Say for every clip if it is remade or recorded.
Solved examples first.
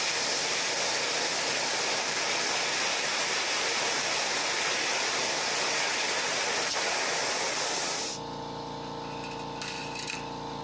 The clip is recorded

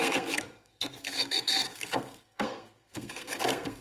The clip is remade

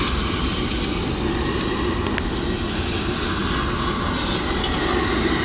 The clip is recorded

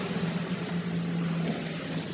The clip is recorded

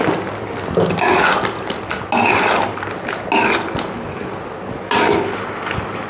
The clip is recorded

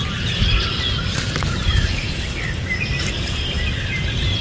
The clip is recorded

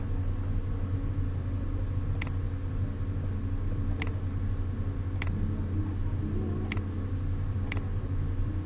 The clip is recorded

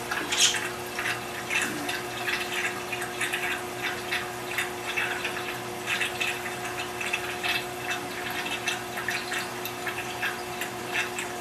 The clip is recorded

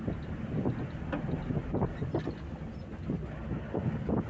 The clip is recorded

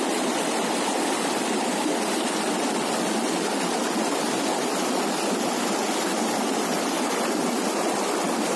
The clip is recorded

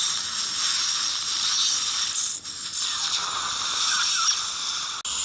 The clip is recorded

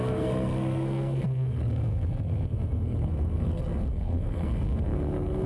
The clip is remade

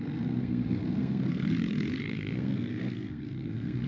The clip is remade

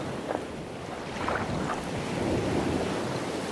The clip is recorded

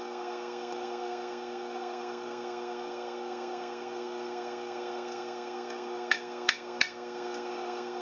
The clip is remade